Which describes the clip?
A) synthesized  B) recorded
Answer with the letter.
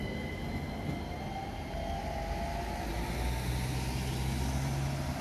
B